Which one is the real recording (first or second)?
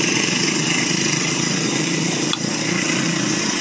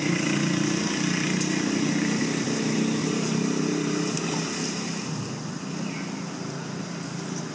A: second